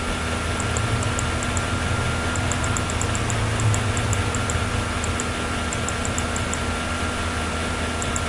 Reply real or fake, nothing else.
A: real